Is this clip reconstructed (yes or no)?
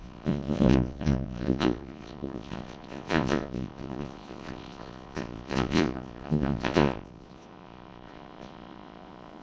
yes